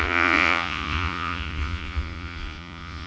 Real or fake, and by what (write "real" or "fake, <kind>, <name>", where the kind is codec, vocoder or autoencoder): fake, vocoder, Vocos